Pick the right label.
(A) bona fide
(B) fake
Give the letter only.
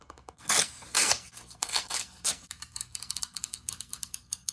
B